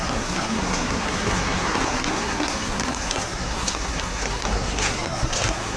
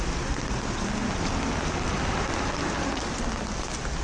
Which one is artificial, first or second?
first